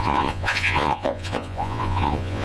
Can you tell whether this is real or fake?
fake